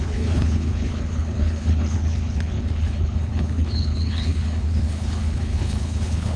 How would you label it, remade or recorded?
remade